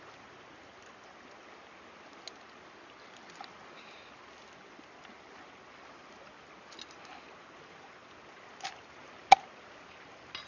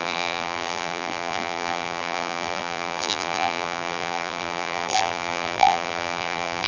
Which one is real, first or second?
first